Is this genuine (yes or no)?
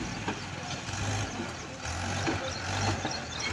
yes